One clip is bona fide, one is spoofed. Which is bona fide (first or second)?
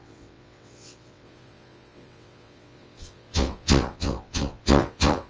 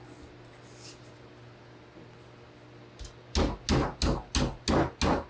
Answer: second